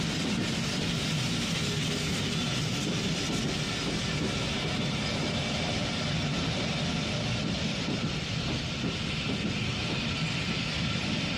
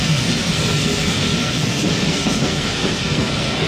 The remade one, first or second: second